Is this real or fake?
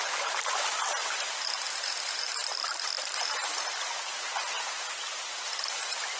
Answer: real